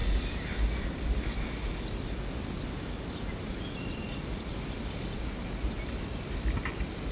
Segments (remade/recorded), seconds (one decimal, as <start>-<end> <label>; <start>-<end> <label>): 0.0-7.1 recorded